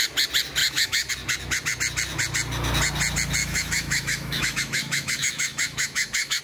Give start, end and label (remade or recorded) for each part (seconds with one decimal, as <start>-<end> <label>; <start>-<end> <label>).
0.0-0.6 recorded; 0.6-1.1 remade; 1.1-3.4 recorded; 3.4-6.4 remade